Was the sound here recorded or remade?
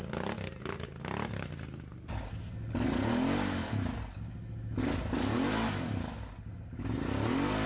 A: recorded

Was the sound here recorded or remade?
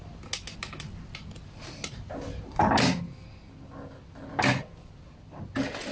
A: recorded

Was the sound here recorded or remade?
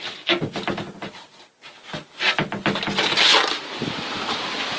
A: recorded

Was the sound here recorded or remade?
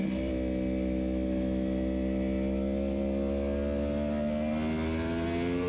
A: recorded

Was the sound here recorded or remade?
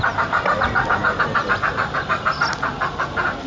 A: recorded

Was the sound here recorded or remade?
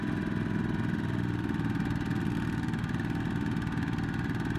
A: recorded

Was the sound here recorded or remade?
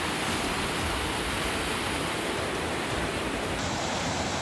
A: recorded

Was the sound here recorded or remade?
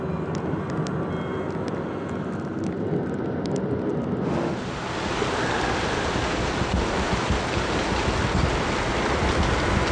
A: recorded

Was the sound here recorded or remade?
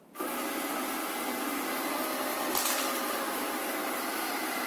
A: recorded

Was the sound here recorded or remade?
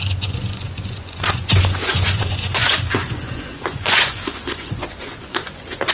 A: remade